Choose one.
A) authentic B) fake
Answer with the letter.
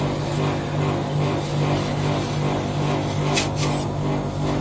A